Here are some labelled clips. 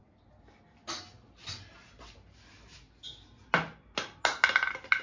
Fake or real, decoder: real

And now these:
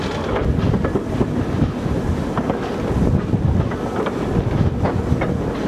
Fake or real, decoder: real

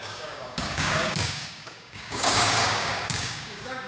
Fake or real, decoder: fake, codec, DAC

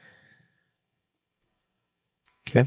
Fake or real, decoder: fake, codec, SNAC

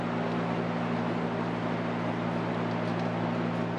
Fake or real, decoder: real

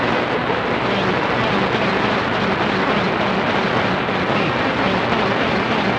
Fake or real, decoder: real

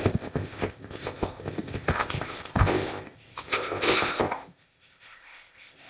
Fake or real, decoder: fake, codec, ZipCodec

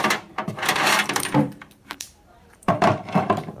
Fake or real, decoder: fake, vocoder, BigVGAN v2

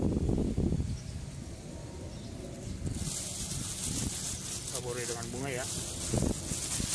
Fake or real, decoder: real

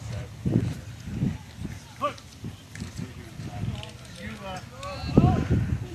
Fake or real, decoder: real